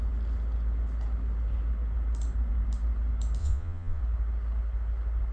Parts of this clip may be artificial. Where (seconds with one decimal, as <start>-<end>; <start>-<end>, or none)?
3.4-4.0